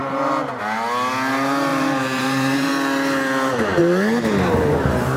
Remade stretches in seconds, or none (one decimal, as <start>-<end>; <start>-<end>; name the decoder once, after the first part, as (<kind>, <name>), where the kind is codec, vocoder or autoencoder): 1.7-2.7 (vocoder, BigVGAN v2); 3.8-5.2